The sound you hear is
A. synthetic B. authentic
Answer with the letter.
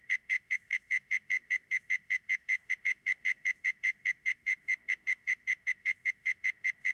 A